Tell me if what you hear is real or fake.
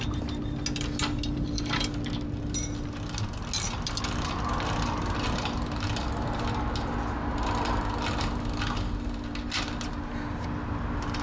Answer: real